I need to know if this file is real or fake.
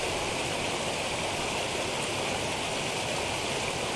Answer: real